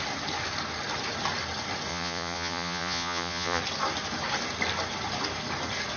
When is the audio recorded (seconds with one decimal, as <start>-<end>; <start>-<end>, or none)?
0.0-1.9; 3.6-6.0